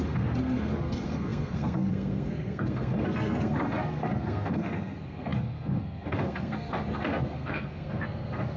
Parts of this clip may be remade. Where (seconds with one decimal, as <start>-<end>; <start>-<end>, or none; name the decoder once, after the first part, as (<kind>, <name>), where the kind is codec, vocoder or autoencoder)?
0.0-8.6 (codec, SNAC)